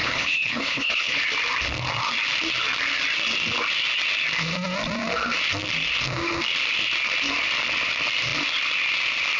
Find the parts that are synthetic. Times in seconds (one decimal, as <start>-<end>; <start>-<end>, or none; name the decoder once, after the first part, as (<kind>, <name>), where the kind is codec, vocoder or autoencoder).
0.0-1.2 (codec, HILCodec)